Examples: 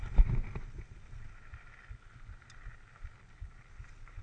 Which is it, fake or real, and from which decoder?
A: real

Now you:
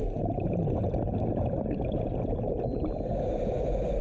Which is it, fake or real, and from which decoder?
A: real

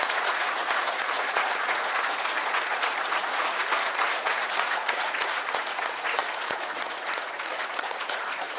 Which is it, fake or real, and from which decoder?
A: fake, vocoder, Vocos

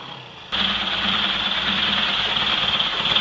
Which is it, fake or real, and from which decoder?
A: real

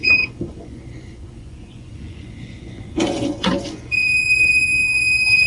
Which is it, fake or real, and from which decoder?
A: fake, vocoder, Vocos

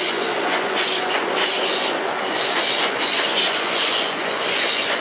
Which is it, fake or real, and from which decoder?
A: fake, vocoder, Vocos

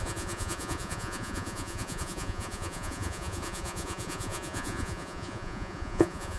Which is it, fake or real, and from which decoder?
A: fake, vocoder, Vocos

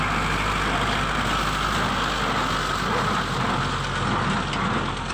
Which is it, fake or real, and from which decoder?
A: real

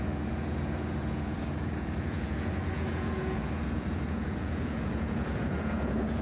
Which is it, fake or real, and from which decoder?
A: fake, vocoder, Vocos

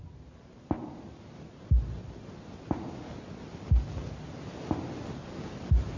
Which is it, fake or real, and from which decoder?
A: real